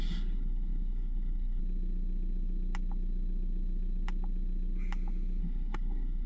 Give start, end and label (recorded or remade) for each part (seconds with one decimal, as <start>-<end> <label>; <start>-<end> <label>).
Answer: 0.0-1.6 remade; 1.6-5.4 recorded; 5.4-6.3 remade